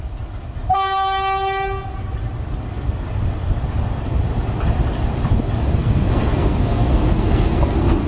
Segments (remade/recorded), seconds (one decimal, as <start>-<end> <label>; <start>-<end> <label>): 0.0-5.7 recorded; 5.7-8.1 remade